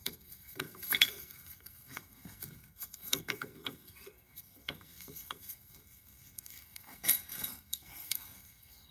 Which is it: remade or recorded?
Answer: remade